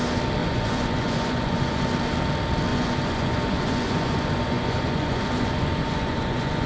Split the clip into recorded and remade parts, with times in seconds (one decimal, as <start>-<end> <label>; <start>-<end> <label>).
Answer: 0.0-0.4 recorded; 0.4-1.8 remade; 1.8-2.7 recorded; 2.7-6.7 remade